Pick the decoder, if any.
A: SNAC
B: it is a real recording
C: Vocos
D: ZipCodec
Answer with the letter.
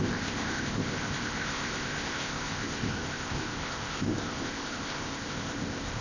D